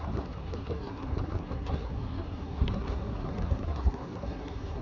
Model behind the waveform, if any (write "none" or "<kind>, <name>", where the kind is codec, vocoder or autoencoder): codec, SNAC